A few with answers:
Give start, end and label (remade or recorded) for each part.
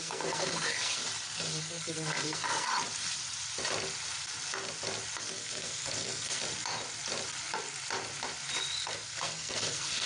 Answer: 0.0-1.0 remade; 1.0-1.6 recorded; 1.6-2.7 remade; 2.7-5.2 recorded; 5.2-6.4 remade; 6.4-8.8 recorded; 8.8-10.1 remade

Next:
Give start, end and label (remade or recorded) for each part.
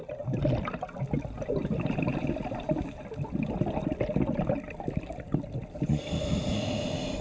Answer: 0.0-7.2 recorded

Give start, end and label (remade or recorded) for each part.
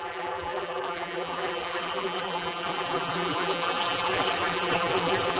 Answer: 0.0-5.4 remade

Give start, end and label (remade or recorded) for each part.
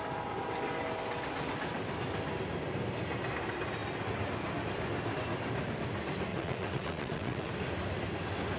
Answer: 0.0-6.3 recorded; 6.3-7.5 remade; 7.5-8.6 recorded